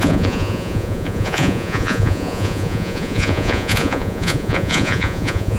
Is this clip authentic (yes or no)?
no